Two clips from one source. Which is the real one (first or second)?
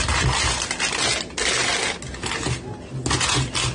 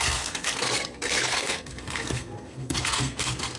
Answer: first